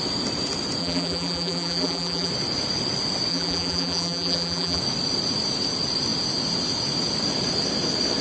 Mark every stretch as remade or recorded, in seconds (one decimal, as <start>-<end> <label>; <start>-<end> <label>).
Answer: 0.0-0.8 recorded; 0.8-2.3 remade; 2.3-3.3 recorded; 3.3-4.8 remade; 4.8-8.2 recorded